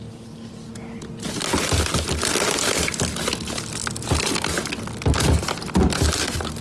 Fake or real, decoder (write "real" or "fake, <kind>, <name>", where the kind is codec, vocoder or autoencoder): real